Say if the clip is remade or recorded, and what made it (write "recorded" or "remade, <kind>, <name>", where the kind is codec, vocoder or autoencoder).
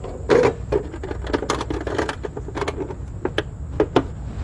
recorded